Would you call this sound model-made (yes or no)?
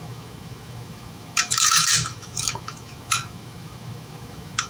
yes